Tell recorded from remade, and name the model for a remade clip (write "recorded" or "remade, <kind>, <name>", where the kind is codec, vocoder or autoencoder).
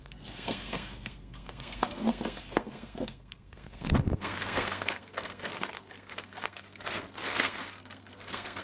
remade, codec, SNAC